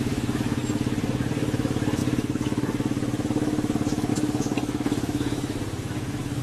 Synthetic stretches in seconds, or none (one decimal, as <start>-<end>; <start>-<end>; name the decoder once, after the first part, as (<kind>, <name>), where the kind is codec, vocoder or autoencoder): 0.0-0.6 (autoencoder, DAC-VAE); 1.3-6.4